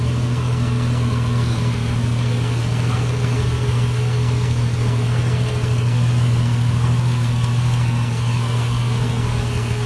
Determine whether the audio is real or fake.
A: fake